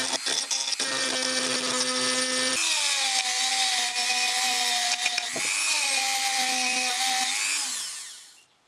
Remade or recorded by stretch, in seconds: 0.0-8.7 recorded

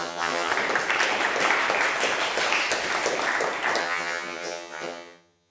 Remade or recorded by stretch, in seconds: 0.0-0.5 remade; 0.5-3.8 recorded; 3.8-5.5 remade

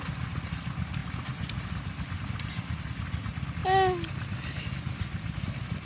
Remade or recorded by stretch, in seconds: 0.0-5.8 recorded